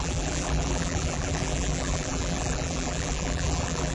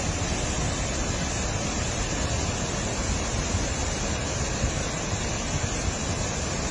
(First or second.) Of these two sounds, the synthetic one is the first